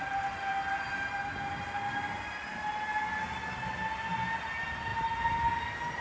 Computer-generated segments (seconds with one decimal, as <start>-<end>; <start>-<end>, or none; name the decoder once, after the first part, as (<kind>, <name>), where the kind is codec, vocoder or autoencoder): none